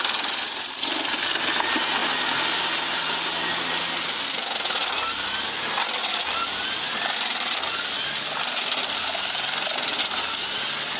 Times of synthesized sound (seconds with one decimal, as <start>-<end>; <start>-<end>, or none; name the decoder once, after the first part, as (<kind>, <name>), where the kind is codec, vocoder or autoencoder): none